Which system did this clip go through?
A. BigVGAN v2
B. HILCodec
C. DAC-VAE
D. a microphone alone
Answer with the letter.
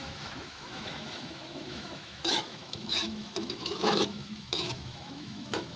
C